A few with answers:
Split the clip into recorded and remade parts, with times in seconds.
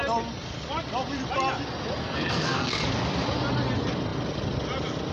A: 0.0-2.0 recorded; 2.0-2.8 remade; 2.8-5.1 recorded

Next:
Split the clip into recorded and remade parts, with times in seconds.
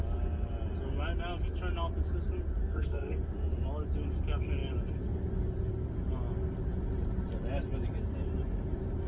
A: 0.0-2.6 recorded; 2.6-3.2 remade; 3.2-9.1 recorded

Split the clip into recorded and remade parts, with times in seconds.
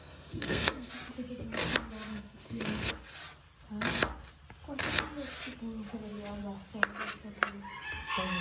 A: 0.0-0.9 remade; 0.9-2.1 recorded; 2.1-2.9 remade; 2.9-8.4 recorded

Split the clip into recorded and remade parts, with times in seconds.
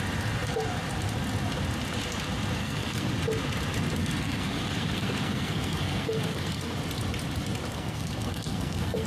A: 0.0-2.6 recorded; 2.6-3.1 remade; 3.1-4.0 recorded; 4.0-6.8 remade; 6.8-7.7 recorded; 7.7-9.1 remade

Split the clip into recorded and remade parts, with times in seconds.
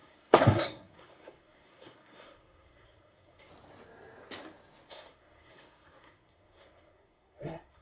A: 0.0-3.5 remade; 3.5-4.9 recorded; 4.9-7.8 remade